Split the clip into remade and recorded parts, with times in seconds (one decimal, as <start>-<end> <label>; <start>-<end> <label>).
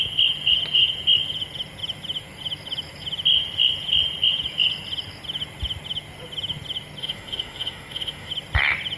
0.0-7.0 recorded; 7.0-8.3 remade; 8.3-9.0 recorded